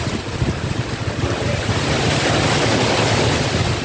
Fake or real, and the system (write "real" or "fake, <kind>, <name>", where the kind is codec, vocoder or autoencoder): real